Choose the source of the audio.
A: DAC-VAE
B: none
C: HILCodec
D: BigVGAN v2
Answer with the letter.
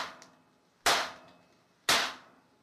B